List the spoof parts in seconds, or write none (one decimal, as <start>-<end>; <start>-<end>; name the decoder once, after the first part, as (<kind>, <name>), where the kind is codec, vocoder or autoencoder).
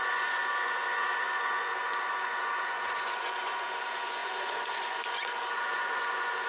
0.0-6.5 (vocoder, Vocos)